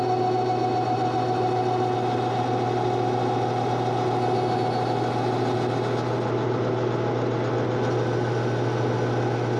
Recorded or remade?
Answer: recorded